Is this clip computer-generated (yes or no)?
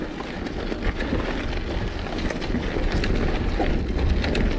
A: no